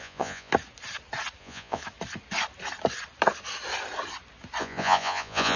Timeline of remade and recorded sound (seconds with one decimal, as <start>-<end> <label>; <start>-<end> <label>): 0.0-0.5 remade; 0.5-1.4 recorded; 1.4-1.8 remade; 1.8-4.6 recorded; 4.6-5.6 remade

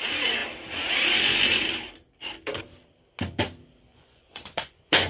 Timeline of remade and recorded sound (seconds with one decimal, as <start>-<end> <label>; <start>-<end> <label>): 0.0-3.9 recorded; 3.9-5.1 remade